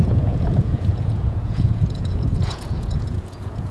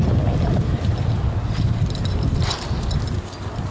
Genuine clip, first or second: second